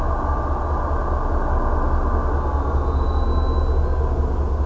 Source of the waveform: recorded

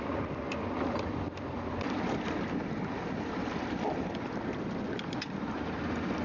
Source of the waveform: recorded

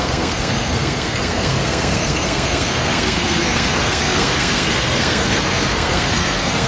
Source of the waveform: remade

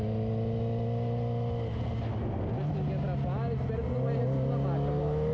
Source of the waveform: recorded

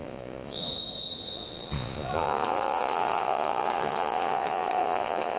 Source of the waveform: remade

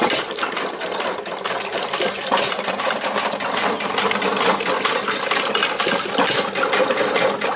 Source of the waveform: recorded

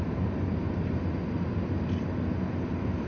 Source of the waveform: recorded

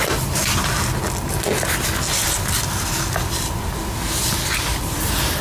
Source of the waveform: recorded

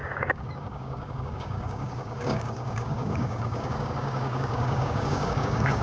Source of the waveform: remade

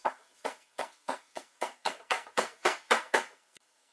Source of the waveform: remade